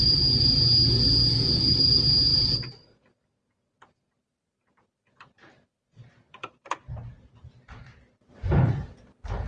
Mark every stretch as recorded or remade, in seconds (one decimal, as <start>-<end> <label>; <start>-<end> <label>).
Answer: 0.0-2.3 recorded; 2.3-6.8 remade; 6.8-9.5 recorded